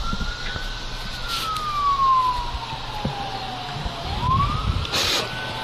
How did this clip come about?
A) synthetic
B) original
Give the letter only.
B